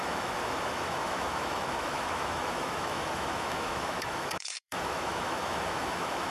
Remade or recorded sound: remade